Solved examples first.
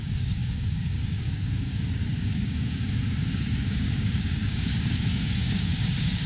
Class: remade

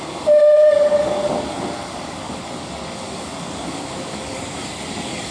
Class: remade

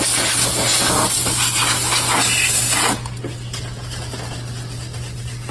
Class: recorded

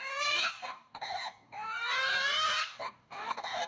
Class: remade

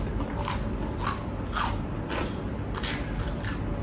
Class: recorded